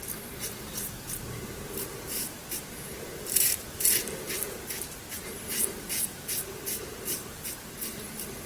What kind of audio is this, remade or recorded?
remade